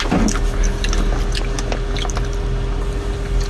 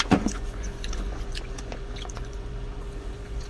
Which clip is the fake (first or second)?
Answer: second